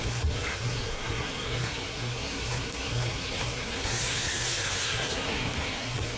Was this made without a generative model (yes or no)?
no